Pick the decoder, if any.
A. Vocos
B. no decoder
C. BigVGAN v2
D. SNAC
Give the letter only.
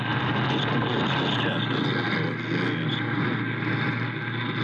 B